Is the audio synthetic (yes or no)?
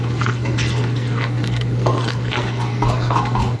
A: yes